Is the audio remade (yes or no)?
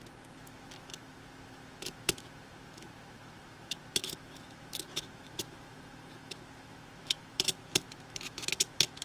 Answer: yes